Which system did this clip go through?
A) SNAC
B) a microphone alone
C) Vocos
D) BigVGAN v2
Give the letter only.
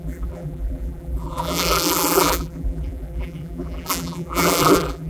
D